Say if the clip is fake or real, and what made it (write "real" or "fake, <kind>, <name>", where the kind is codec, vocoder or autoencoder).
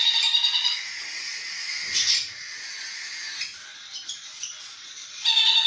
real